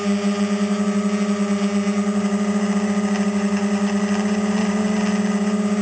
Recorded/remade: recorded